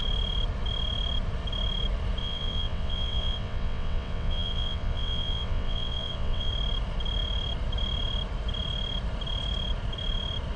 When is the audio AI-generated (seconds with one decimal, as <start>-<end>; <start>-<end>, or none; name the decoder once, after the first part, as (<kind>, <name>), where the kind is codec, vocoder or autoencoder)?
2.2-6.5 (vocoder, WaveNeXt)